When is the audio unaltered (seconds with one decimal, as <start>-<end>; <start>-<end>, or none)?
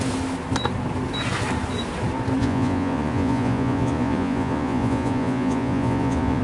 0.0-2.4